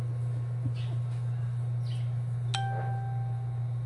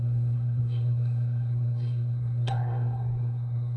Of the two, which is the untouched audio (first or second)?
first